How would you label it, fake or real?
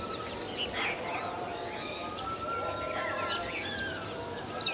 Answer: real